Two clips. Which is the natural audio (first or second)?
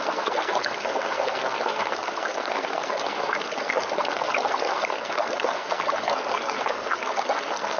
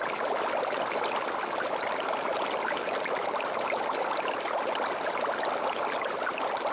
second